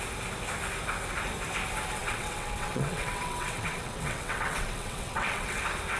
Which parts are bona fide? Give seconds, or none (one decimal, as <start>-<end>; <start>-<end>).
0.0-2.0; 5.6-6.0